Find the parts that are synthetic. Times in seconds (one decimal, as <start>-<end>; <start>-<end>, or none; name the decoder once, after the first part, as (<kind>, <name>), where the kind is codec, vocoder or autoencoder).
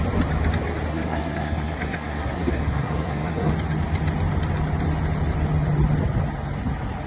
0.9-3.5 (codec, SNAC)